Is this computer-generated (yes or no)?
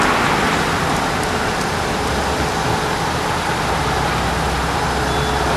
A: no